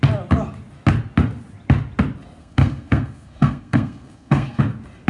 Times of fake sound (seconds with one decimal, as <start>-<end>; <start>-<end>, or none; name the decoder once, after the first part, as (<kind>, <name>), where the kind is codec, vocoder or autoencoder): 2.4-4.6 (codec, SNAC)